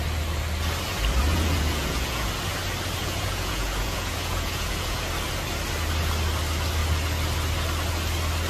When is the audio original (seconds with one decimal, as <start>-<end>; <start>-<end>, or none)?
0.0-1.3; 2.3-3.0; 5.1-8.5